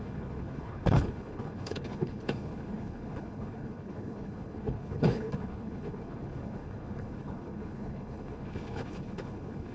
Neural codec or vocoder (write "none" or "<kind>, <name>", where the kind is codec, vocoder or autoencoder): codec, HILCodec